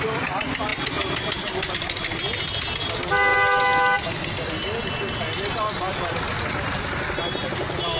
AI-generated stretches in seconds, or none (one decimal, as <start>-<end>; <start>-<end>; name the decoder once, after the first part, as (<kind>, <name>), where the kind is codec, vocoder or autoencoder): none

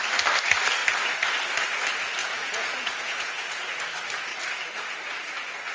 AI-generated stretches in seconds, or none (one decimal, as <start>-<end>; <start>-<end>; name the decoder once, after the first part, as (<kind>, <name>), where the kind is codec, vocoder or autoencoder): 2.2-3.7 (vocoder, Vocos)

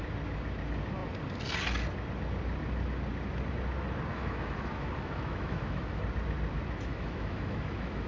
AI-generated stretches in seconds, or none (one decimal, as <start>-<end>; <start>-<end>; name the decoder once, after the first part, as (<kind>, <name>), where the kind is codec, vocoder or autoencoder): 4.1-6.0 (autoencoder, DAC-VAE); 6.9-8.1

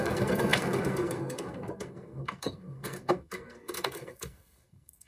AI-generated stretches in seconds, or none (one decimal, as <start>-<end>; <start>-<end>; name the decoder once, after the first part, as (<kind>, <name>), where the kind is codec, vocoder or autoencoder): 0.0-5.1 (codec, SNAC)

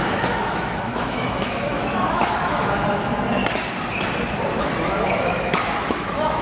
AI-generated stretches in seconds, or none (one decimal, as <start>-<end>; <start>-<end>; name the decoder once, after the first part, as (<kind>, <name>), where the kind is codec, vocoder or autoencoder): 0.0-3.4 (autoencoder, DAC-VAE); 4.6-6.4